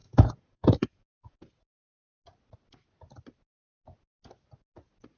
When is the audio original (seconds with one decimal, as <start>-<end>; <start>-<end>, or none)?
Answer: 1.5-5.2